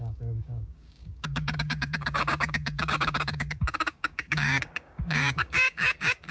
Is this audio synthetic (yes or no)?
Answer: yes